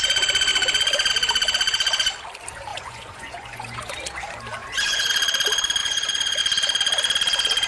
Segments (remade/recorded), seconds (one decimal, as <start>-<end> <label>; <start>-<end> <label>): 0.0-2.7 recorded; 2.7-3.9 remade; 3.9-4.6 recorded; 4.6-5.1 remade; 5.1-5.8 recorded; 5.8-6.4 remade; 6.4-7.7 recorded